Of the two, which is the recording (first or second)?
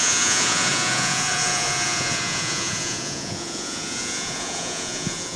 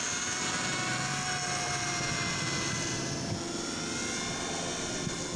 second